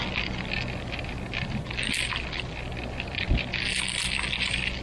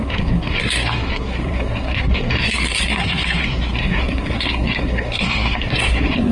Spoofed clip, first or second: second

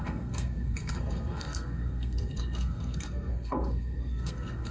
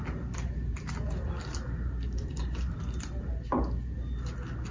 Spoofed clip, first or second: first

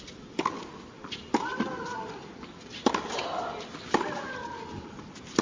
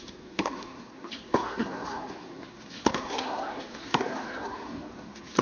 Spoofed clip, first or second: second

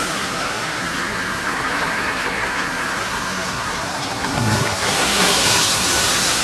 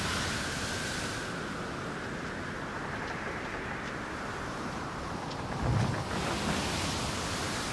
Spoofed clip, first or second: first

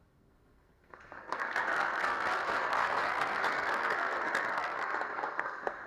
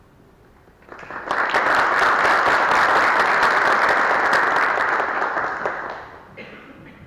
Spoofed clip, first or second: first